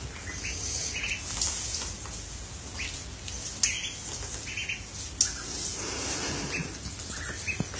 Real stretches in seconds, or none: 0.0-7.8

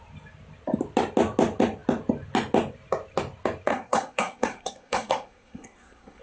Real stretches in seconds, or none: 0.0-3.7

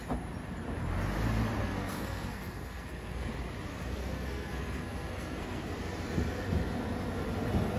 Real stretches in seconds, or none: 0.0-1.6; 3.3-3.7; 5.7-7.8

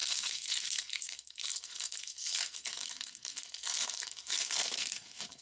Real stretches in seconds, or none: none

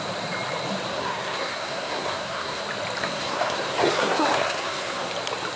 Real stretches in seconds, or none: 0.0-0.9; 2.6-3.0; 5.1-5.6

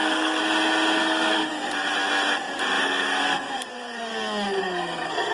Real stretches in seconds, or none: 0.4-1.0; 1.5-2.8; 4.1-4.6